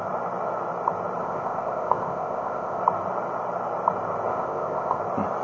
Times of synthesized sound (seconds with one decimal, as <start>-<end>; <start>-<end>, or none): 1.2-2.8; 4.3-5.0